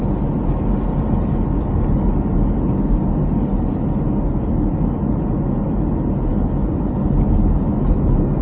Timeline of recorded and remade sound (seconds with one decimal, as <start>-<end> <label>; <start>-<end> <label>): 0.0-8.4 recorded